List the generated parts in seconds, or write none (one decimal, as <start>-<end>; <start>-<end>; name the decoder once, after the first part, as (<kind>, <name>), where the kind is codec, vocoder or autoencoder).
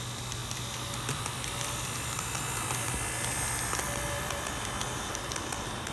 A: none